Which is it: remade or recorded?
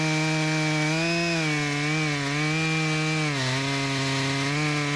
recorded